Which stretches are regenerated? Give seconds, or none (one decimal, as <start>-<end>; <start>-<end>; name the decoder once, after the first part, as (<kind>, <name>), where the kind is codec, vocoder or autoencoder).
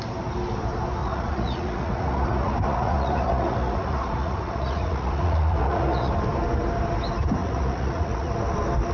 1.0-6.1 (vocoder, Vocos); 7.4-8.3